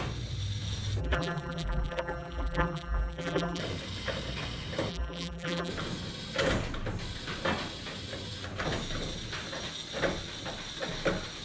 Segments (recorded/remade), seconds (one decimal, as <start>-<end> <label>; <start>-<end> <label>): 0.0-1.0 recorded; 1.0-3.6 remade; 3.6-4.9 recorded; 4.9-5.7 remade; 5.7-11.4 recorded